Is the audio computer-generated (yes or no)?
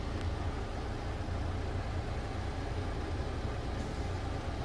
no